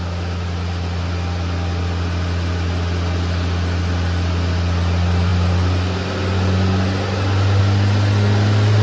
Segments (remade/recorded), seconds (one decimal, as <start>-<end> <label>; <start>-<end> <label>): 0.0-8.8 recorded